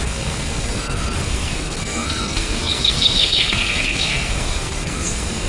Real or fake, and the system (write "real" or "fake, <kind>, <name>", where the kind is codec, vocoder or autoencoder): fake, codec, SNAC